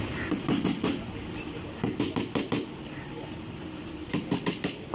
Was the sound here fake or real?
real